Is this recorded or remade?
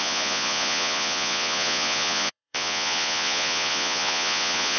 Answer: remade